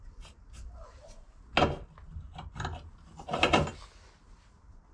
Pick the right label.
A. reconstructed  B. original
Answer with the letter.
B